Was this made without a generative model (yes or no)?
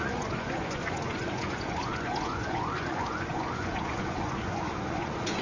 no